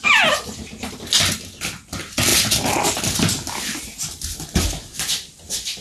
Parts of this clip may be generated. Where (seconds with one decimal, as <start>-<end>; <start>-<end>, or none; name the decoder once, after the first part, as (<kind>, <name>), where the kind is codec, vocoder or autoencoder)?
none